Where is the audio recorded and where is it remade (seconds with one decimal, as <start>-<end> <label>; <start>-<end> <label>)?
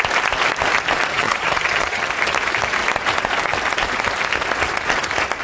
0.0-1.1 recorded; 1.1-2.1 remade; 2.1-5.4 recorded